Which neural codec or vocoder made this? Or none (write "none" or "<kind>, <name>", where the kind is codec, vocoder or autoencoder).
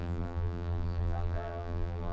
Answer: vocoder, BigVGAN v2